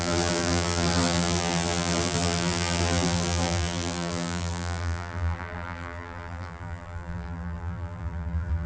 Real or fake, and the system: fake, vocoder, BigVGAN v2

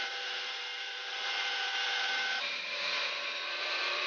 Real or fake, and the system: fake, vocoder, BigVGAN v2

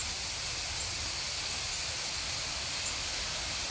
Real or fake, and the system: real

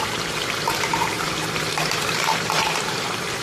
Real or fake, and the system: fake, vocoder, BigVGAN v2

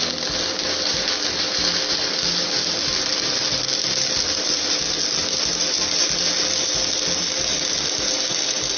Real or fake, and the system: real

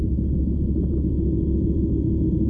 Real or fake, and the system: real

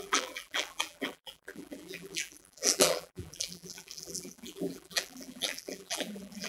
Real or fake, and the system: fake, vocoder, BigVGAN v2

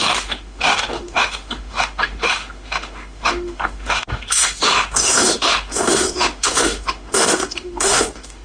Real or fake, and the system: fake, autoencoder, DAC-VAE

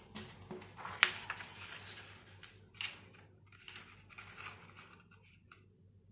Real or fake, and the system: real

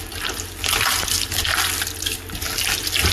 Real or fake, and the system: real